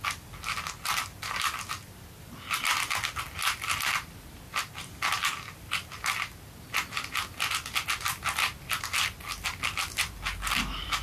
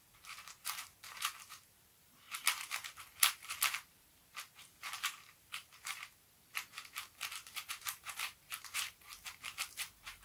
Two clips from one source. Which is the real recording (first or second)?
first